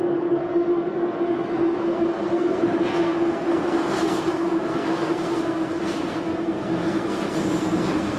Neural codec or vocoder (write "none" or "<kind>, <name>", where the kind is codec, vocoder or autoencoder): codec, SNAC